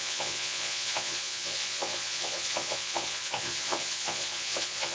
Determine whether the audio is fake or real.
fake